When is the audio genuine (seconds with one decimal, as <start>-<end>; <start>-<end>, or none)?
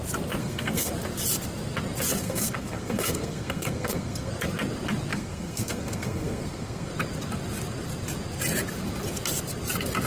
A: 0.0-0.4; 0.9-2.2; 4.3-5.1; 6.9-10.1